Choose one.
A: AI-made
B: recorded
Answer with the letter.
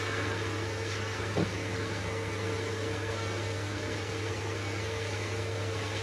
A